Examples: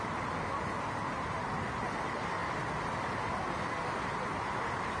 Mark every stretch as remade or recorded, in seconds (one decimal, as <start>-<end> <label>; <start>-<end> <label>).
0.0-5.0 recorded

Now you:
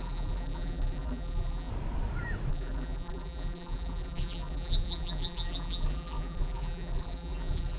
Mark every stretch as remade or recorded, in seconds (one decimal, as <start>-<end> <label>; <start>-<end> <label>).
0.0-1.7 remade; 1.7-2.5 recorded; 2.5-7.8 remade

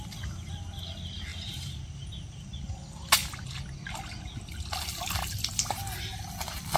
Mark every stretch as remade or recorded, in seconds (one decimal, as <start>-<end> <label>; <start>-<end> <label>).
0.0-1.3 recorded; 1.3-2.1 remade; 2.1-6.8 recorded